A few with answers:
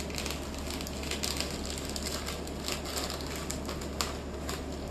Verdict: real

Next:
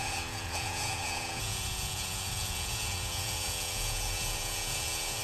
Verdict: fake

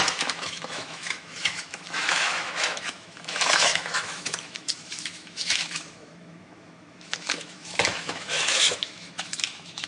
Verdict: fake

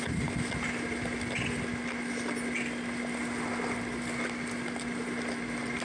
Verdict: real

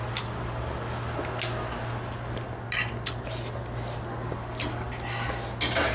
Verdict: real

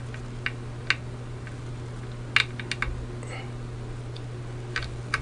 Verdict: real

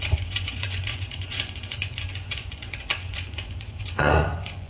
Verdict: fake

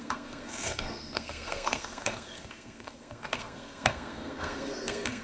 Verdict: fake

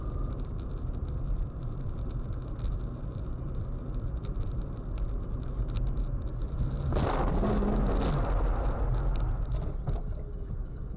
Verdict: real